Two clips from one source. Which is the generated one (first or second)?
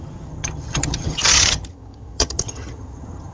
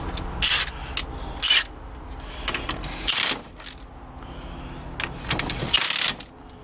first